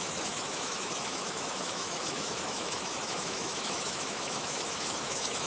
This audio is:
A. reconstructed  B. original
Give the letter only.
A